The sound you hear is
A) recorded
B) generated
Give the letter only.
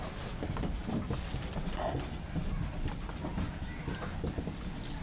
A